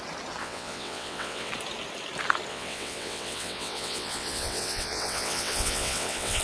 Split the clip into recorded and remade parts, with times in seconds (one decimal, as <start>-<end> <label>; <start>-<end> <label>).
0.0-0.4 recorded; 0.4-1.5 remade; 1.5-2.5 recorded; 2.5-6.4 remade